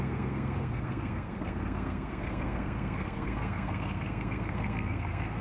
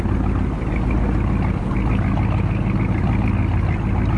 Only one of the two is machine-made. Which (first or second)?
first